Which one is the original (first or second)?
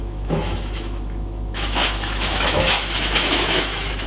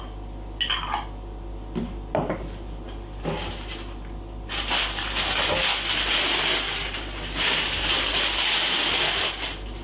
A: second